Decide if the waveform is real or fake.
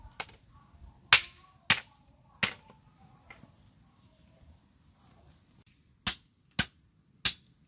real